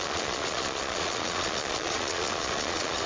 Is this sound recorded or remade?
remade